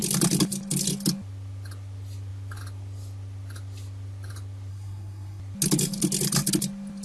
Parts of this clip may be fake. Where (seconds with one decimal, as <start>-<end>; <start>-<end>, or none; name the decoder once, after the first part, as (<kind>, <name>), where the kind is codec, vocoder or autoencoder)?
4.7-5.4 (codec, SNAC)

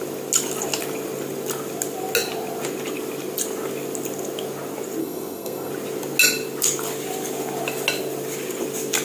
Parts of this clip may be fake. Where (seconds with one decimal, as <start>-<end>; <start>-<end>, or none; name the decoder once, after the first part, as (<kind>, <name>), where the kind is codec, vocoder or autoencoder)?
5.0-5.7 (codec, SNAC)